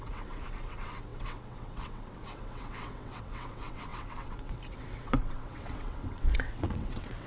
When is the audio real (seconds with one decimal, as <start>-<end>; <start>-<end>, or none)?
none